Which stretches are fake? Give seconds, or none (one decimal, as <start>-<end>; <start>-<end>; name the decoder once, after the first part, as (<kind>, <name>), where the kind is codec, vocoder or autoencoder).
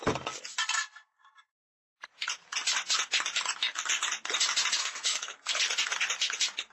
0.5-1.6 (codec, SNAC); 4.8-5.6